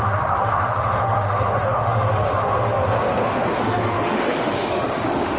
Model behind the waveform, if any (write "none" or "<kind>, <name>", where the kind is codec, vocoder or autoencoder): autoencoder, DAC-VAE